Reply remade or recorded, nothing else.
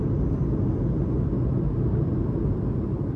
recorded